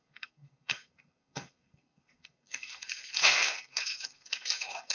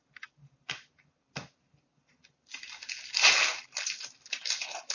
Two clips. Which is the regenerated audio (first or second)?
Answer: first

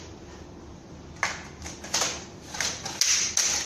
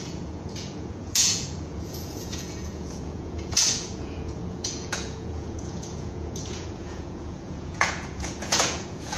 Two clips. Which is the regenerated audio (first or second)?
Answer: second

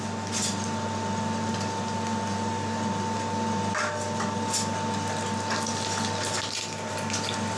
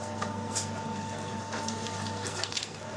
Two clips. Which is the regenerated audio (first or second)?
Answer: second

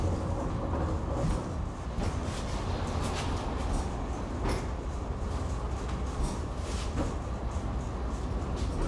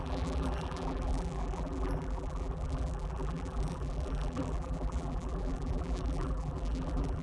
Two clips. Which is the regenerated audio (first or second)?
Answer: second